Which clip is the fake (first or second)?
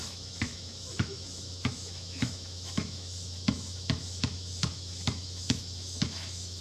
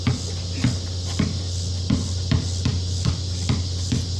first